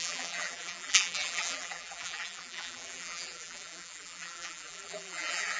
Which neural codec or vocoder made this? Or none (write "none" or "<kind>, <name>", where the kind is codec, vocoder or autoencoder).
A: vocoder, BigVGAN v2